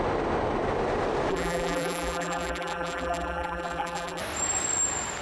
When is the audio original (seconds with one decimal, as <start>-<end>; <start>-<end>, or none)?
0.0-1.3; 4.2-5.2